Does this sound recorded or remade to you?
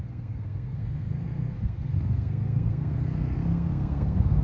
remade